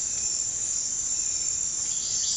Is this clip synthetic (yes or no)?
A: no